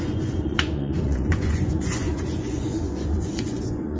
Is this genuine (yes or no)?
no